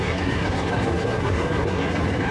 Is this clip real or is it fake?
fake